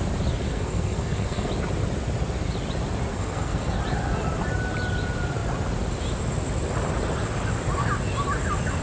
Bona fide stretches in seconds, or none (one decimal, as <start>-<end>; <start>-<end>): 0.0-0.4; 1.5-3.1; 3.8-8.8